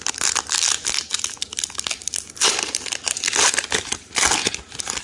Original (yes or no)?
yes